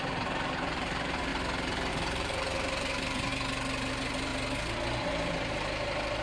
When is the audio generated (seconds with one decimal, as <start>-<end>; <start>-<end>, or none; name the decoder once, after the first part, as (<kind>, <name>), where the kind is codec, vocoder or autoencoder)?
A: 0.0-1.3 (vocoder, BigVGAN v2); 1.9-3.3; 3.9-4.3; 5.0-6.2

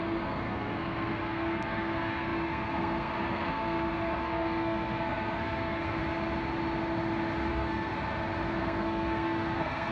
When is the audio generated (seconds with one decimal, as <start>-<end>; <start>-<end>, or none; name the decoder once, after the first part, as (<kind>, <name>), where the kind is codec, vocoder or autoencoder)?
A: 0.0-6.0 (codec, SNAC); 7.5-7.9; 8.5-9.9